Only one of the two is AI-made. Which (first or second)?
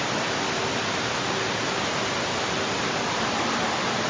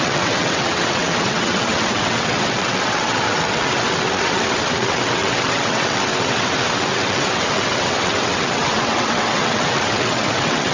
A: second